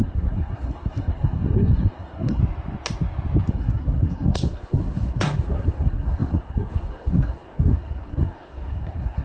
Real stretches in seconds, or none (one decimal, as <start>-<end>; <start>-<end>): 2.4-3.5